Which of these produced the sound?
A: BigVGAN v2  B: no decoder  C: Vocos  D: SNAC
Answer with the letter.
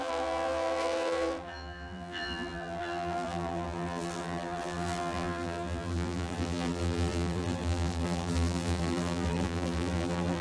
A